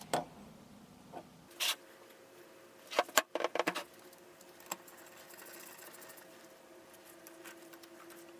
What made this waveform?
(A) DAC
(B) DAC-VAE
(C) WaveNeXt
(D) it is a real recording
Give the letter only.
D